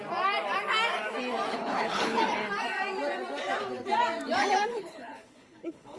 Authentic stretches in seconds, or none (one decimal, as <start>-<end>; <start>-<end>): 0.0-1.5; 2.2-4.7